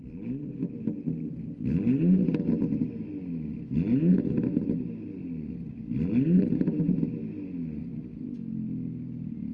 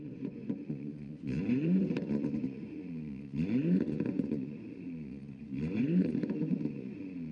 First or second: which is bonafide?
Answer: first